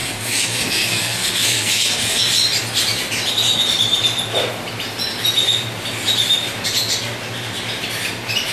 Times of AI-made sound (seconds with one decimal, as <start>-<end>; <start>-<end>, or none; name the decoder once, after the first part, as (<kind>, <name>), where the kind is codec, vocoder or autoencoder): 0.0-2.2 (codec, SNAC)